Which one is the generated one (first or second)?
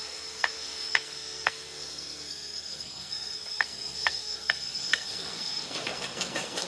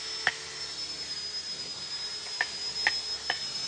first